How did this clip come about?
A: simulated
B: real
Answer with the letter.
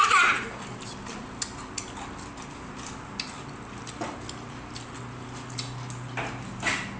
B